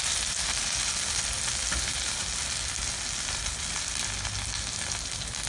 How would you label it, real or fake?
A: real